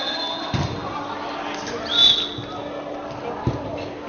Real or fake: real